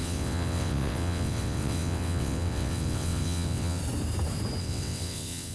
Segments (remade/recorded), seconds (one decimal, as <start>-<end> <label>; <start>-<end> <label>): 0.0-3.8 remade; 3.8-4.6 recorded; 4.6-5.5 remade

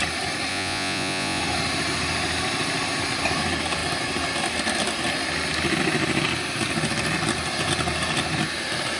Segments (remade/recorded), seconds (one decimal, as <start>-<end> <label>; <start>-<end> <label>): 0.0-0.5 recorded; 0.5-1.4 remade; 1.4-9.0 recorded

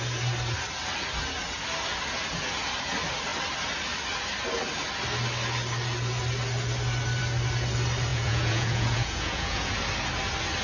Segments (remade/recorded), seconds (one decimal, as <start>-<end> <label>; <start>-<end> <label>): 0.0-8.1 recorded; 8.1-9.7 remade; 9.7-10.6 recorded